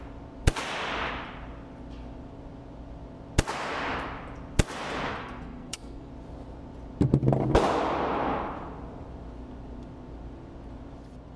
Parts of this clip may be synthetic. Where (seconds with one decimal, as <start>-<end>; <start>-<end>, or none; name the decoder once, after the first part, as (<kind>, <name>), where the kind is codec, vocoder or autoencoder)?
5.2-6.1 (codec, SNAC)